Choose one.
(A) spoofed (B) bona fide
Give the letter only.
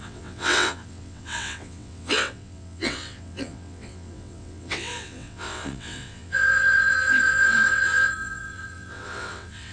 A